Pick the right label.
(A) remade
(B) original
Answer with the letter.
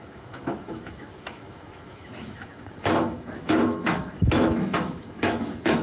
A